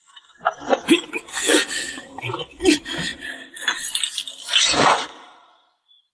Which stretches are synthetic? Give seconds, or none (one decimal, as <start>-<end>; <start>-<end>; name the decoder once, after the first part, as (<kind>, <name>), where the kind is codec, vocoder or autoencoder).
1.3-2.2 (codec, SNAC)